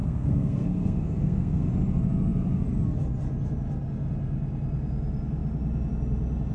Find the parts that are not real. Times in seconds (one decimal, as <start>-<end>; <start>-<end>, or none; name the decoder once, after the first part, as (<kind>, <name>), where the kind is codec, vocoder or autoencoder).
0.0-1.7 (codec, SNAC)